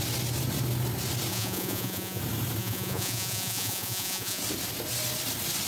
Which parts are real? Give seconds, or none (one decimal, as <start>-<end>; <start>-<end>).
0.0-1.3; 2.2-2.6; 4.4-5.7

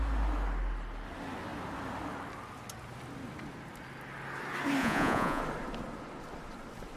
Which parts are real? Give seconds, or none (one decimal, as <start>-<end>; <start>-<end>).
0.0-4.8; 5.4-7.0

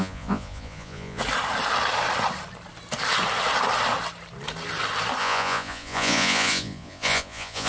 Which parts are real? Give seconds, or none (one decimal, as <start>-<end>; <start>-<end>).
1.2-5.2